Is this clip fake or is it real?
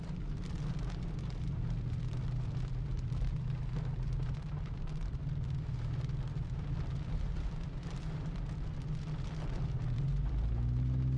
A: fake